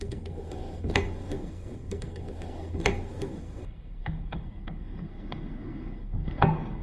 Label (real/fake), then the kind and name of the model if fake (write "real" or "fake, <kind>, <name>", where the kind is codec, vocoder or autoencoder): fake, codec, SNAC